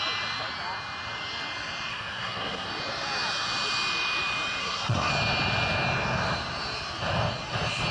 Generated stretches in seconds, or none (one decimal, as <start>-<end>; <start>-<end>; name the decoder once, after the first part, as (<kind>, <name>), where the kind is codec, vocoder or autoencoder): 1.9-2.7 (codec, SNAC); 4.6-5.1